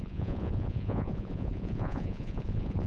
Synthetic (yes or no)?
yes